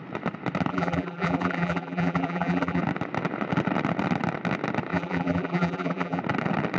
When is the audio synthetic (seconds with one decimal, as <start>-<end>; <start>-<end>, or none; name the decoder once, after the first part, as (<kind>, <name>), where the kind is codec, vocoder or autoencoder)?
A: 0.7-2.8 (vocoder, BigVGAN v2); 4.9-6.2